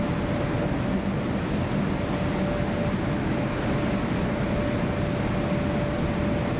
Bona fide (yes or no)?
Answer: yes